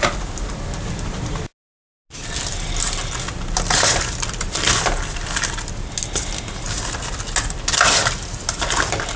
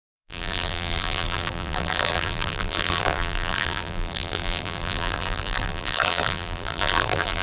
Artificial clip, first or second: second